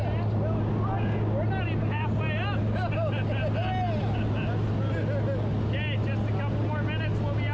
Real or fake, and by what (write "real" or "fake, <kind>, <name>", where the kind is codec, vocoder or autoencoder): real